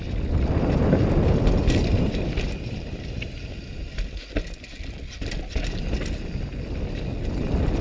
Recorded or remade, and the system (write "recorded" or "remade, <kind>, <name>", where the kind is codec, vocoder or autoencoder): recorded